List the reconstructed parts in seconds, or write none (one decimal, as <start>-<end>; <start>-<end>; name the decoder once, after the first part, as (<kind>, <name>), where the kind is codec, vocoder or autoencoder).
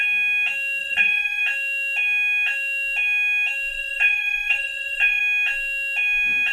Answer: 0.8-1.4 (vocoder, Vocos); 3.7-5.2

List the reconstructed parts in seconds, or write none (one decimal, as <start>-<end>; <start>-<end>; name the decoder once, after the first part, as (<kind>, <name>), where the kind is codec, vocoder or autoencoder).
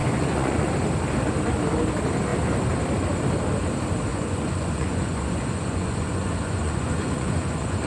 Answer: 0.0-0.7 (vocoder, Vocos); 4.1-7.9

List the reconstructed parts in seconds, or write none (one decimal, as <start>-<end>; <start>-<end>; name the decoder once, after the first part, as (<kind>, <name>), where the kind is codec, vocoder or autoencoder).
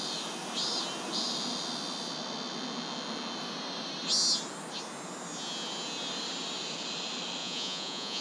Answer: 7.4-8.2 (vocoder, Vocos)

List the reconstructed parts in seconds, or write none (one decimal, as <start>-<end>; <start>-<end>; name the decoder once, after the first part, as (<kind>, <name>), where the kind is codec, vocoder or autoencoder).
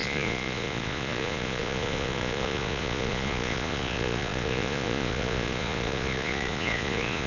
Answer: 0.0-7.3 (vocoder, Vocos)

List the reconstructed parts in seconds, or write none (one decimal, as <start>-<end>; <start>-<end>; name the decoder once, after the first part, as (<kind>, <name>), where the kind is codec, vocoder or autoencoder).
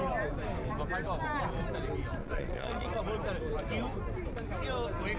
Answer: 2.2-3.0 (vocoder, Vocos)